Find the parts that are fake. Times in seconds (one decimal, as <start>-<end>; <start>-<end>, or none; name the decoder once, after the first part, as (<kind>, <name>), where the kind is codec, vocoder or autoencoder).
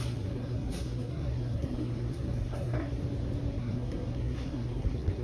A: 0.0-3.0 (codec, SNAC); 3.5-5.2